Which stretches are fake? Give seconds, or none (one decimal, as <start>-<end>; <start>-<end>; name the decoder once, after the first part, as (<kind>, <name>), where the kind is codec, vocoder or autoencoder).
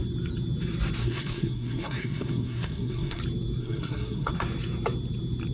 1.0-3.2 (codec, SNAC); 3.6-4.3